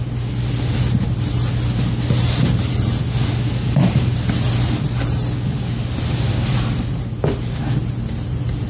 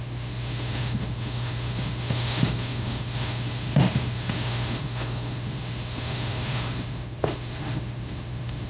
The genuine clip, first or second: first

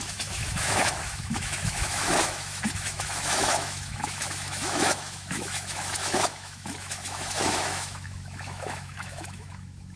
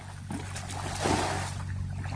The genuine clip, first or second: second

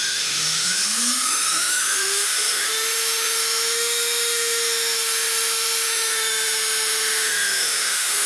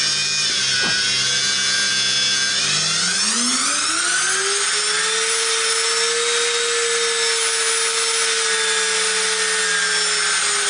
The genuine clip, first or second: second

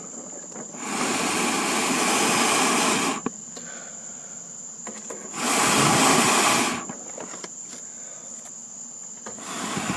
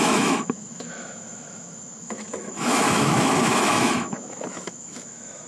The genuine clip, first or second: first